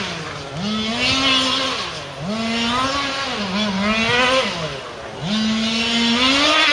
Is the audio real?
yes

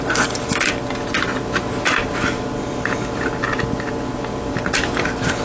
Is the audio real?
yes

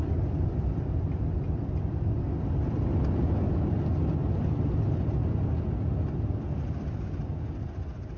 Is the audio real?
yes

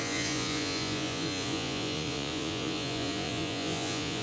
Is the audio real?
no